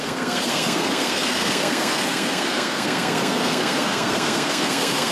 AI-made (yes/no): yes